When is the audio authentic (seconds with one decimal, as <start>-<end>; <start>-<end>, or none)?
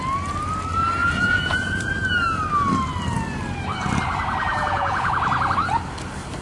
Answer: 0.0-1.0; 1.9-4.5; 5.1-6.4